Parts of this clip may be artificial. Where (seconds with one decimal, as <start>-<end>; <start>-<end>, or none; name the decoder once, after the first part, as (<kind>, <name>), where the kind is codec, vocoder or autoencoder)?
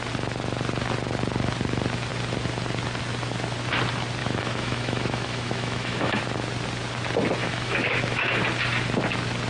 4.2-6.2 (autoencoder, DAC-VAE); 7.4-8.4